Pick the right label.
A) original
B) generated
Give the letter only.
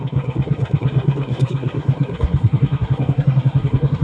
B